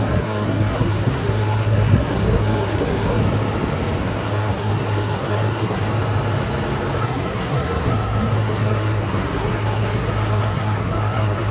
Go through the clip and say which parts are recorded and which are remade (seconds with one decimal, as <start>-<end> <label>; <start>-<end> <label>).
0.0-3.2 remade; 3.2-4.0 recorded; 4.0-5.9 remade; 5.9-7.0 recorded; 7.0-11.5 remade